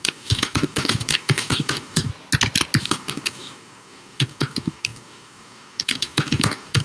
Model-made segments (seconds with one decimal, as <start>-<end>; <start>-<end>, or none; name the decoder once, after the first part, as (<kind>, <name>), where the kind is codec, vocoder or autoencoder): 0.0-2.1 (codec, DAC); 2.8-6.8